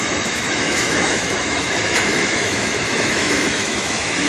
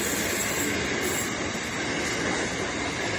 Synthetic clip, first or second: first